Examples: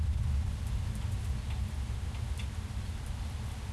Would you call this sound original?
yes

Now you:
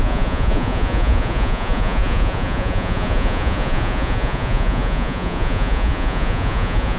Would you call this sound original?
no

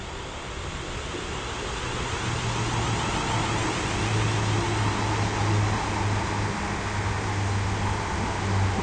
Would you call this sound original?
yes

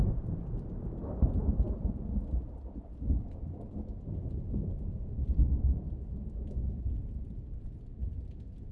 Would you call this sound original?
yes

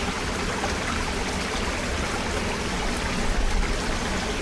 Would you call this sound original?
yes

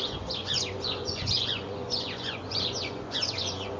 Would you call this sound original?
no